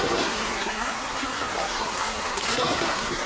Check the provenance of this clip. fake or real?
fake